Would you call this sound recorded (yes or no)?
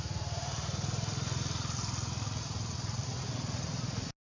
yes